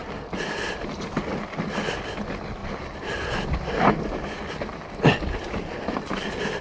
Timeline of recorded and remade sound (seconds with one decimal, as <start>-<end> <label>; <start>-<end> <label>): 0.0-2.6 recorded; 2.6-4.0 remade; 4.0-4.7 recorded; 4.7-5.7 remade; 5.7-6.6 recorded